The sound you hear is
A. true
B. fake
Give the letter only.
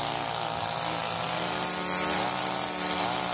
A